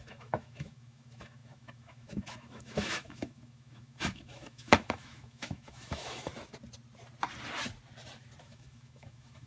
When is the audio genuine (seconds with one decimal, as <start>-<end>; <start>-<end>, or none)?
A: 6.3-8.4